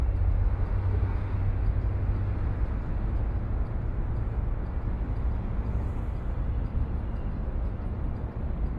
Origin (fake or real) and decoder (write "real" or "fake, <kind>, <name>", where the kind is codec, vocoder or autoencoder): real